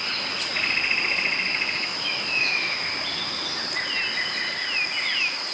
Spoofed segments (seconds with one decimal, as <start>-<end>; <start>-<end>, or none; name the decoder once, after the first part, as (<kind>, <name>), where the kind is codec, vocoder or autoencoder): 1.5-2.9 (autoencoder, DAC-VAE)